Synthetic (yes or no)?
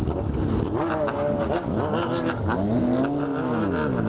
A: no